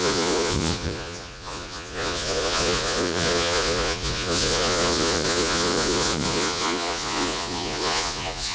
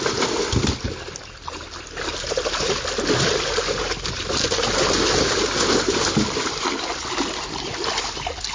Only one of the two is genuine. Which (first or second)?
second